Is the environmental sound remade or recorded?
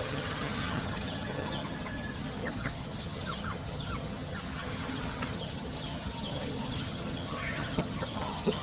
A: remade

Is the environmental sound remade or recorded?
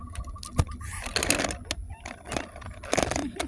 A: recorded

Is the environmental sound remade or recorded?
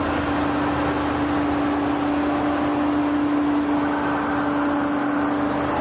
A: recorded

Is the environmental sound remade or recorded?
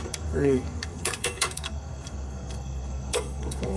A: remade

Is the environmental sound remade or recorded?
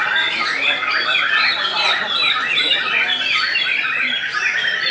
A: remade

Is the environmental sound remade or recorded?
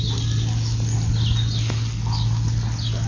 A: recorded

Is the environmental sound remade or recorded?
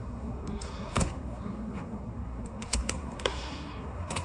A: remade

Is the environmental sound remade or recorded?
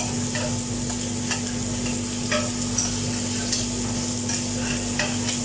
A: recorded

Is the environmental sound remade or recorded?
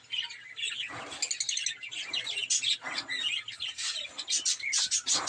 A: recorded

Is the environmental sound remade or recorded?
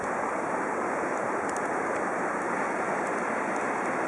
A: recorded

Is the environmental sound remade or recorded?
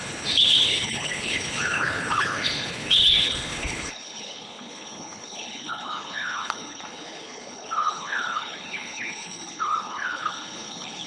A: remade